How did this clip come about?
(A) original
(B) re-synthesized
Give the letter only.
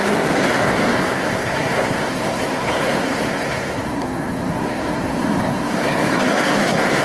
B